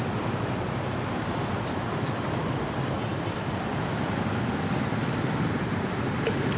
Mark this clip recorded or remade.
remade